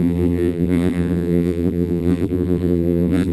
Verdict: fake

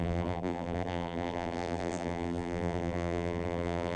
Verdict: fake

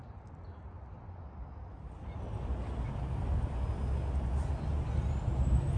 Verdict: real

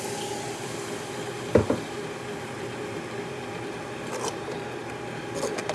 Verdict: fake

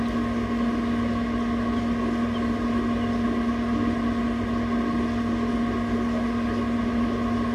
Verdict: real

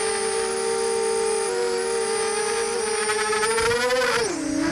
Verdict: real